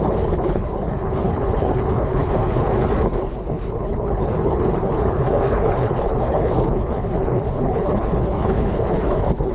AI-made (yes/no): yes